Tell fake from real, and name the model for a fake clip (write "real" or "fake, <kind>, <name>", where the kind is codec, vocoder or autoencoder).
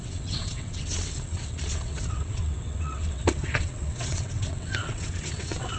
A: fake, vocoder, WaveNeXt